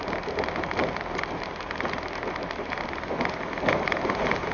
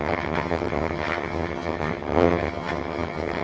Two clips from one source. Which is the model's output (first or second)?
second